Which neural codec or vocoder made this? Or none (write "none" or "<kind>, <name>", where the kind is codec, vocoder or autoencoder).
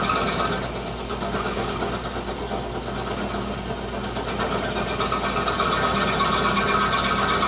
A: none